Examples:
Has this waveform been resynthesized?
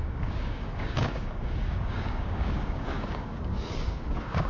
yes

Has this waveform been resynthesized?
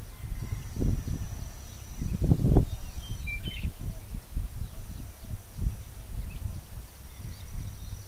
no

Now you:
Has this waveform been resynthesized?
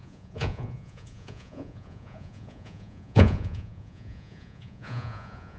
yes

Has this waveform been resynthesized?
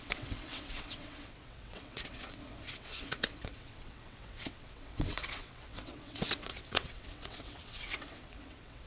yes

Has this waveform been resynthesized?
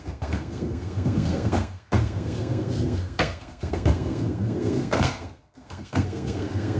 yes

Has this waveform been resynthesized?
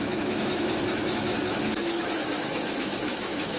yes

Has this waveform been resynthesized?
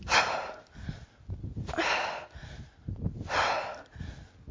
no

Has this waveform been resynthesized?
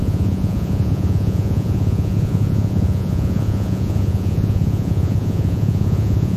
yes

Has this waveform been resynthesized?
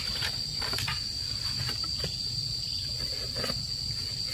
no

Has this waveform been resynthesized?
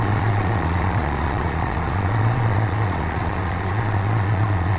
yes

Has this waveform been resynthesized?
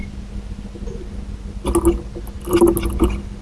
no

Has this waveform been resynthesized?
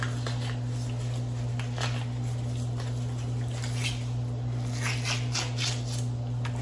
no